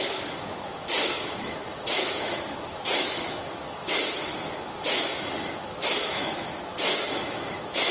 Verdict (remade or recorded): remade